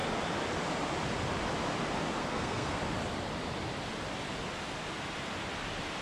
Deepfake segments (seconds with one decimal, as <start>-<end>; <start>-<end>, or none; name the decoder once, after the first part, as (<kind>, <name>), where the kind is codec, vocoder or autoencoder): 2.2-2.8 (codec, SNAC)